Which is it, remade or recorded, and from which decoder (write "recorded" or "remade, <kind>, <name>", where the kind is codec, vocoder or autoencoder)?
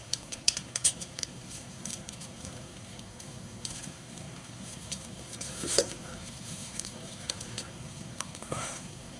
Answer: remade, codec, SNAC